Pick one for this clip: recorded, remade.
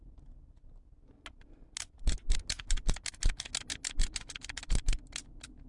recorded